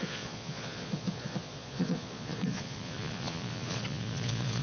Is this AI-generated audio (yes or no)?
yes